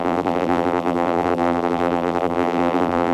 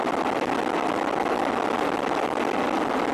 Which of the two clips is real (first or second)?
second